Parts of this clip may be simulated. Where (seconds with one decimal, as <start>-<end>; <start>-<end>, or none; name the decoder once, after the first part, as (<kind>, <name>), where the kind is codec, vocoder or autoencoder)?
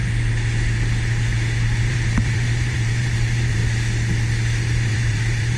1.9-3.6 (vocoder, BigVGAN v2); 4.6-5.6